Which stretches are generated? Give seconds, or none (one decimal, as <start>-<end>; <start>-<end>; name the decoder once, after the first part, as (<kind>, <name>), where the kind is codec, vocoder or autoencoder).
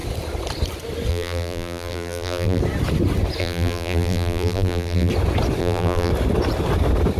1.1-2.6 (vocoder, BigVGAN v2); 3.4-5.1; 5.6-6.1